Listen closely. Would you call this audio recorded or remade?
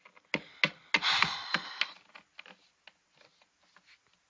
recorded